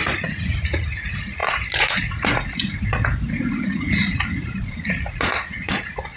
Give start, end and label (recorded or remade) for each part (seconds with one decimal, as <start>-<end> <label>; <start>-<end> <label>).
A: 0.0-6.2 remade